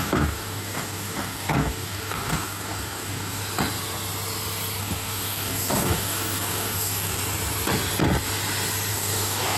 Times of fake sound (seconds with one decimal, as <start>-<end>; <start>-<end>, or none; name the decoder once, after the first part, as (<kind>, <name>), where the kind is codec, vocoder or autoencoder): 0.0-3.4 (codec, DAC); 4.8-7.2; 8.9-9.6

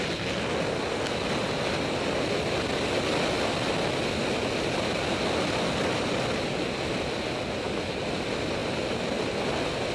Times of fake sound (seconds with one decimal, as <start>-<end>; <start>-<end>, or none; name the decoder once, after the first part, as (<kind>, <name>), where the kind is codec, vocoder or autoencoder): none

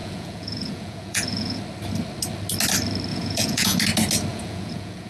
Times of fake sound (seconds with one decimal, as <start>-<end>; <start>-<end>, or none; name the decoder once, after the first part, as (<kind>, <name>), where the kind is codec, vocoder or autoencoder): 0.0-1.6 (vocoder, Vocos); 3.1-3.8; 4.3-5.1

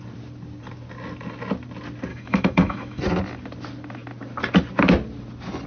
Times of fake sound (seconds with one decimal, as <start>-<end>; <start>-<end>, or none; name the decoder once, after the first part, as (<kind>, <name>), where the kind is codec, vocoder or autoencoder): 2.1-3.0 (autoencoder, DAC-VAE)